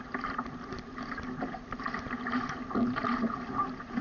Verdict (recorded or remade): remade